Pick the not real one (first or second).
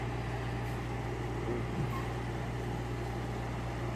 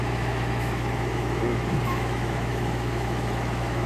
second